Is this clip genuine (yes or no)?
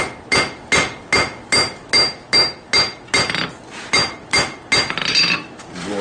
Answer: yes